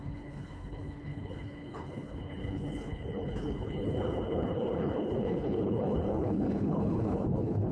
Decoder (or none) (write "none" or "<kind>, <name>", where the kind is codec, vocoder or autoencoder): codec, HILCodec